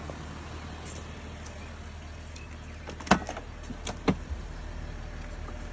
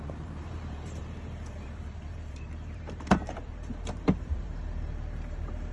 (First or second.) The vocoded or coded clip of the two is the second